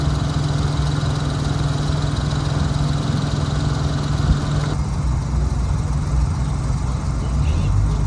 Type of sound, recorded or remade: recorded